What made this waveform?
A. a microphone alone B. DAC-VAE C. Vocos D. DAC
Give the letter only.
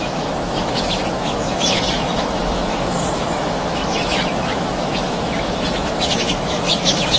B